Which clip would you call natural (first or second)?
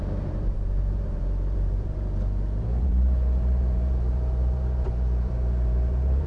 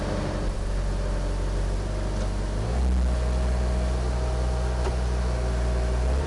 second